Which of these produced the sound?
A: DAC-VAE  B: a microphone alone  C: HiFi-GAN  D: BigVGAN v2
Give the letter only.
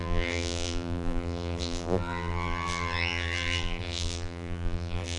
D